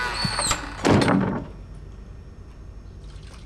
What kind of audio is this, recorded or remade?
recorded